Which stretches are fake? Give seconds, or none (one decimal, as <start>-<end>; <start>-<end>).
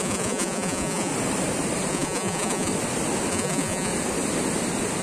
0.0-1.1; 1.9-2.7; 3.3-3.9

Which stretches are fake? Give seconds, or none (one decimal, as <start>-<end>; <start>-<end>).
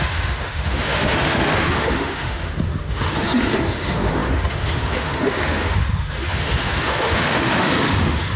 0.0-8.4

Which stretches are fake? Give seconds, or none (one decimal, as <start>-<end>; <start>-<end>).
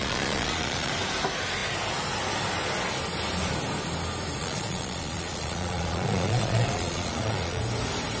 0.0-0.9; 4.4-7.6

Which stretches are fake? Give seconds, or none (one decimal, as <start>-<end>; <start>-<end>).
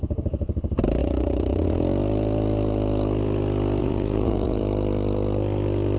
1.0-1.8; 3.8-4.6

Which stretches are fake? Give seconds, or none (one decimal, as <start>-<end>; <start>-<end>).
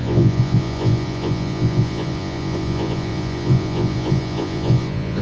0.0-5.2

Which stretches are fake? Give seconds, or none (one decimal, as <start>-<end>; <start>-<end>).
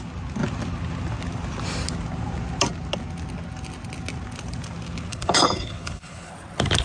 5.1-6.3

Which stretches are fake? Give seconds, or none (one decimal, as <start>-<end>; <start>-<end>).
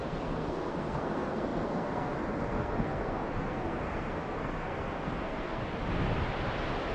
0.0-5.6